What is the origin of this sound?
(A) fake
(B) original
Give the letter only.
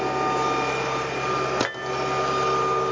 B